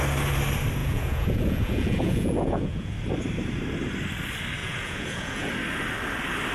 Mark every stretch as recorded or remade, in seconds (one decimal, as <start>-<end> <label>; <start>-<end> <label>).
0.0-0.8 recorded; 0.8-2.9 remade; 2.9-4.6 recorded; 4.6-5.5 remade; 5.5-6.5 recorded